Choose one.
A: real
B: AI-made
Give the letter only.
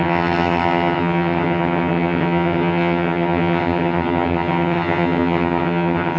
B